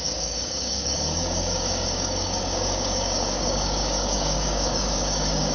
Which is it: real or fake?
fake